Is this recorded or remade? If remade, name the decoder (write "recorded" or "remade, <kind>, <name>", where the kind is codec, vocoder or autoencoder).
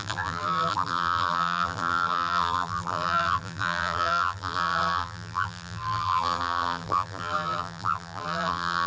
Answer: remade, vocoder, BigVGAN v2